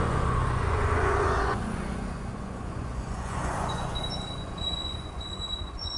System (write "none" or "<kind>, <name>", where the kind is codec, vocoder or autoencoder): vocoder, Vocos